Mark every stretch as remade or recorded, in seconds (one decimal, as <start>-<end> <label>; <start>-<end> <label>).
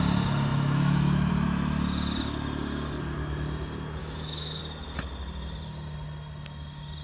0.0-0.5 recorded; 0.5-1.3 remade; 1.3-4.0 recorded; 4.0-4.6 remade; 4.6-7.0 recorded